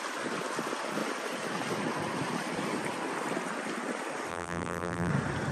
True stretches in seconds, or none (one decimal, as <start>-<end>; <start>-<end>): 0.0-4.3; 5.1-5.5